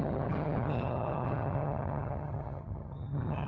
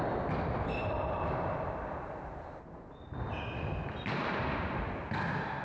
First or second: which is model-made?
first